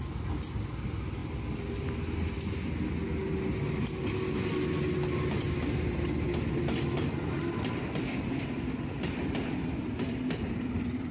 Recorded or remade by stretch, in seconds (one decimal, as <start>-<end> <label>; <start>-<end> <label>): 0.0-11.1 recorded